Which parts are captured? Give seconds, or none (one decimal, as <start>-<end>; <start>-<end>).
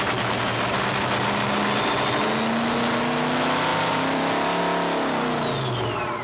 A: 0.0-3.7; 4.6-6.2